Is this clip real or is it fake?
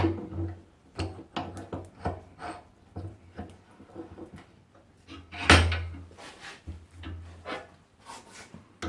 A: real